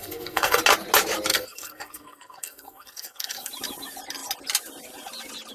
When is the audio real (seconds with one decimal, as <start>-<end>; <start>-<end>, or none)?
0.6-1.3; 3.5-5.5